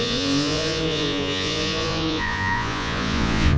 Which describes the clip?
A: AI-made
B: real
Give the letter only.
A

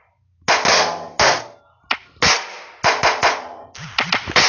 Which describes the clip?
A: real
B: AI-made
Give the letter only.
A